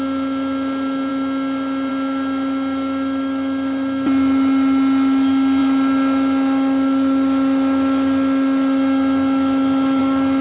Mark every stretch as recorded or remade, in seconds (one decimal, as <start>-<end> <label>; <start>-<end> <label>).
0.0-10.4 recorded